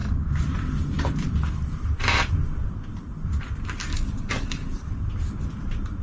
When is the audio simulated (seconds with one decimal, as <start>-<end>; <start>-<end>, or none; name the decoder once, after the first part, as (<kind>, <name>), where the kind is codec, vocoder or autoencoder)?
3.9-4.9 (codec, DAC)